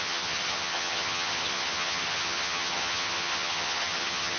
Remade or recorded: remade